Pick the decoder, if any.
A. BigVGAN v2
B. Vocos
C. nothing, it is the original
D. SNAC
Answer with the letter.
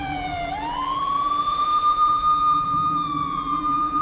A